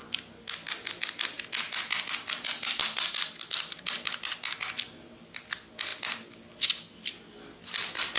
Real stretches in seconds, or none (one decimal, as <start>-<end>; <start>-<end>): 0.0-8.2